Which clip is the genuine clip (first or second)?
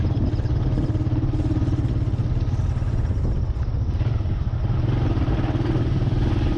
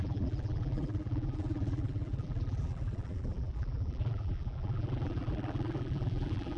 first